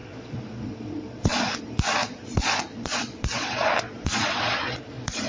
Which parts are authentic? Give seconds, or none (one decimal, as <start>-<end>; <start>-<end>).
1.6-2.0